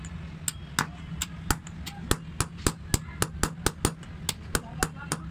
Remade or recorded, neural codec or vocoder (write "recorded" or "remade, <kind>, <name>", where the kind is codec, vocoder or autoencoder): recorded